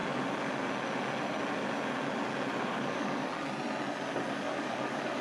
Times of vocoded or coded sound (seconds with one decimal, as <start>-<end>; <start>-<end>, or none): 2.6-3.3; 4.3-5.2